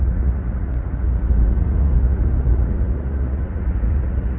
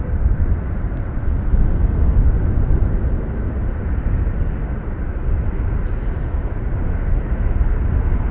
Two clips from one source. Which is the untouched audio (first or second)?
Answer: second